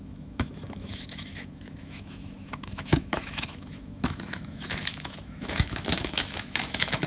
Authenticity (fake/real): fake